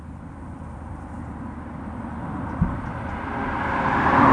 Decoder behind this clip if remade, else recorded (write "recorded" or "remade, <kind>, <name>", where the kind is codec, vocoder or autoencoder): remade, vocoder, BigVGAN v2